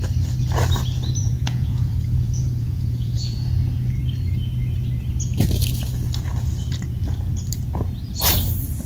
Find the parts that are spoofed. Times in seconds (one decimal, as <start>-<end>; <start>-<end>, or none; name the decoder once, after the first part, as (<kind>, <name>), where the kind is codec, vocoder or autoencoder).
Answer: 1.2-3.4 (vocoder, Vocos)